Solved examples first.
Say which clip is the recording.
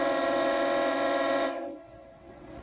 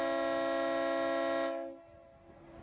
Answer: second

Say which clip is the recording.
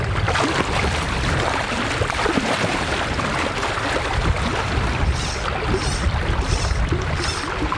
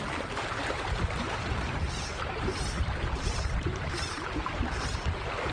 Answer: first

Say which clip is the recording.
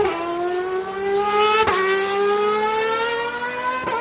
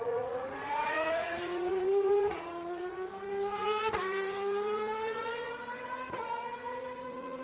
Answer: first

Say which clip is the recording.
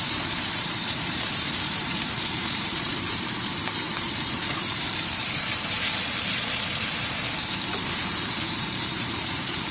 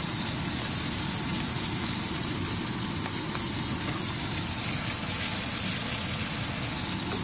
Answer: second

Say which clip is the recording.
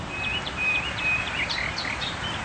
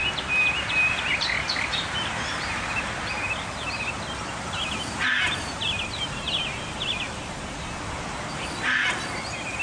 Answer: second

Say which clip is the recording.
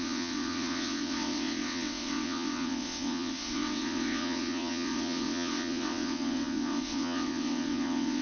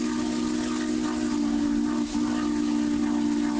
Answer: second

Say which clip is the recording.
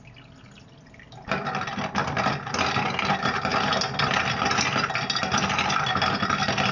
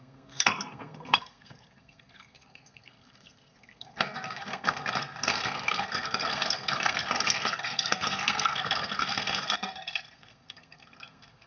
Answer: first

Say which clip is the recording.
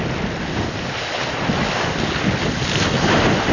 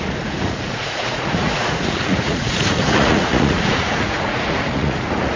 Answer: first